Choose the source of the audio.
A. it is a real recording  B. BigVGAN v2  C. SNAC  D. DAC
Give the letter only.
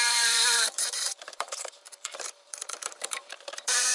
B